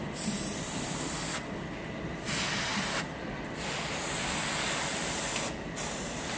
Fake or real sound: real